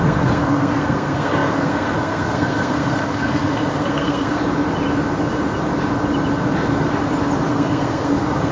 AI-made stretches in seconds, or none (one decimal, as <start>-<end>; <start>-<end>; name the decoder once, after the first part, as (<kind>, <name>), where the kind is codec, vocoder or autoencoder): 0.0-4.4 (codec, SNAC); 7.5-8.5